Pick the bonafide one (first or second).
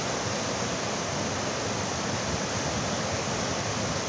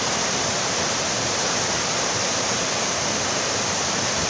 first